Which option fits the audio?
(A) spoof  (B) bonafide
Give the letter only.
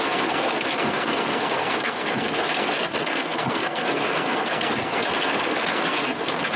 A